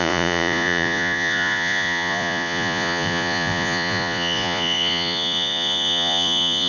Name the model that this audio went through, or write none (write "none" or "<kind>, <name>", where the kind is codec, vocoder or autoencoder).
vocoder, Vocos